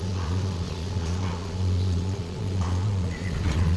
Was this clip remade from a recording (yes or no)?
yes